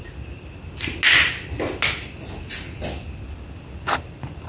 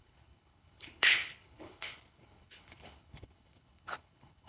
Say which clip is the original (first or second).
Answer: first